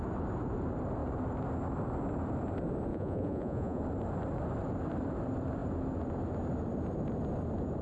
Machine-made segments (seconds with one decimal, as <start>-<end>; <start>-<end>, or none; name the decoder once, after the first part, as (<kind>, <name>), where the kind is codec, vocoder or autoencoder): 2.9-3.8 (vocoder, Vocos)